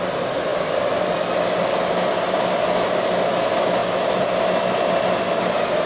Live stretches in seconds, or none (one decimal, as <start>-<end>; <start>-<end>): 0.0-5.9